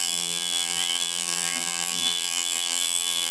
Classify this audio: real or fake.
fake